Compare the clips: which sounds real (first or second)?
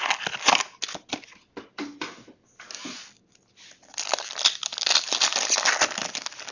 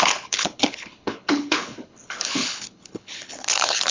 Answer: first